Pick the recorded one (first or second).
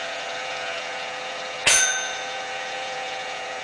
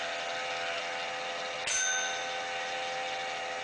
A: second